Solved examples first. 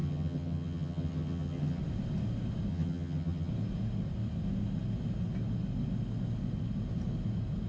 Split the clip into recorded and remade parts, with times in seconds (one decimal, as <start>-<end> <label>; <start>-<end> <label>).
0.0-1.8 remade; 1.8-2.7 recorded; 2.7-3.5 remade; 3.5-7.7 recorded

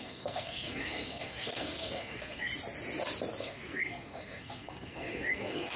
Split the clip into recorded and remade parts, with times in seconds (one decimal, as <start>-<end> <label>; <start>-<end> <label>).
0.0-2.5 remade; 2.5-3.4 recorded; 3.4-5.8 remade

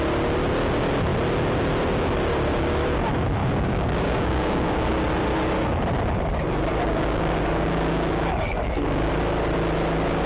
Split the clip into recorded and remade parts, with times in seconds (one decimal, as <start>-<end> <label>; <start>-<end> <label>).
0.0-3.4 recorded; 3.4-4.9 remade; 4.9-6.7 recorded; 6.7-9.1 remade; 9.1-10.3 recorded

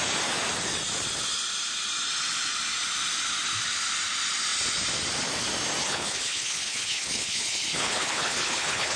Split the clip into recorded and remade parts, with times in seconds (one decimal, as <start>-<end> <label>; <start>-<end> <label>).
0.0-5.8 recorded; 5.8-9.0 remade